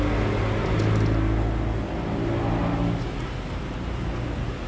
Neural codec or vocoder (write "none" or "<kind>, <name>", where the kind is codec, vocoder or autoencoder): none